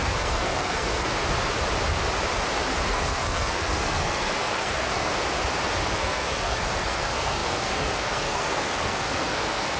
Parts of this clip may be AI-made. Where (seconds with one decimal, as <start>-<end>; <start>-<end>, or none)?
0.0-1.1; 2.9-5.1; 5.9-9.8